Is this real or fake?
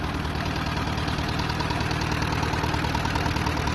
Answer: real